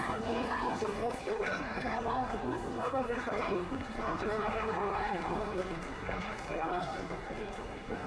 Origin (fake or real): fake